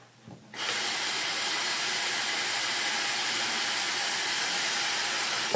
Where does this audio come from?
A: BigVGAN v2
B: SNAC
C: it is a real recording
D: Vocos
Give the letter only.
C